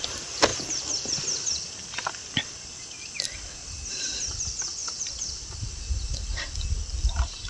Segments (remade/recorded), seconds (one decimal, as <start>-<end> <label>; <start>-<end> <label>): 0.0-7.5 recorded